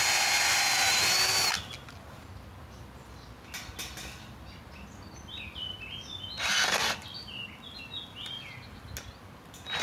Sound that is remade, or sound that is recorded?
recorded